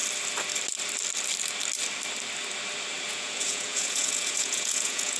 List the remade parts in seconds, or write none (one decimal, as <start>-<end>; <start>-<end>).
3.1-5.2